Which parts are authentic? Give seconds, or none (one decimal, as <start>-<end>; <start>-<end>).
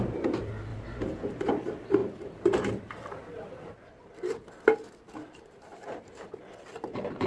0.0-0.7; 1.5-2.0; 2.9-5.7; 6.3-7.3